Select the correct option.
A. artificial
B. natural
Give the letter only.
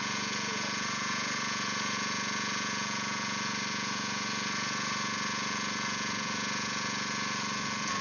A